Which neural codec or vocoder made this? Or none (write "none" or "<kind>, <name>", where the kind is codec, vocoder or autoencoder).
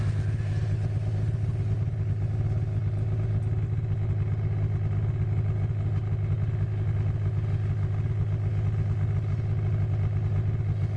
none